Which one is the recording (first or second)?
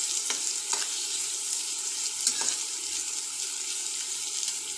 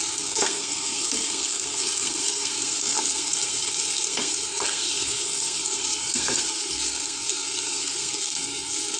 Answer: first